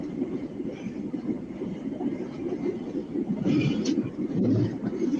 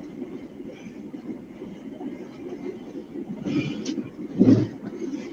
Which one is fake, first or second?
first